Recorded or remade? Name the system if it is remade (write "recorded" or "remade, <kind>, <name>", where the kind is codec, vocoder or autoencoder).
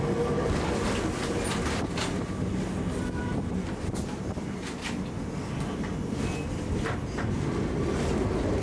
recorded